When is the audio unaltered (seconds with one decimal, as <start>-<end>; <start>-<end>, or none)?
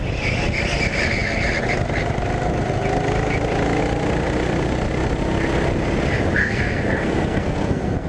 0.0-6.4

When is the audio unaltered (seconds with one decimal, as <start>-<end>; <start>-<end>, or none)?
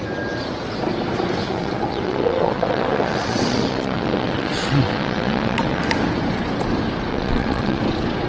0.0-1.4; 5.8-7.1; 7.8-8.3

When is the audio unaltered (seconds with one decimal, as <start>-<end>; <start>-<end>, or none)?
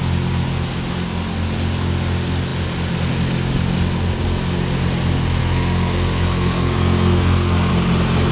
0.0-5.4; 7.7-8.3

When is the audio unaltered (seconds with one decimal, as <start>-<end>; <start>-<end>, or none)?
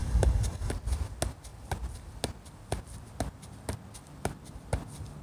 0.7-5.2